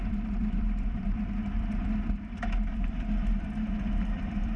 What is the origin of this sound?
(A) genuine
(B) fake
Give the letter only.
B